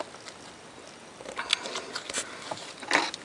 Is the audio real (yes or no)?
yes